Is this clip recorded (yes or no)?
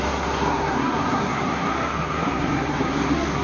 no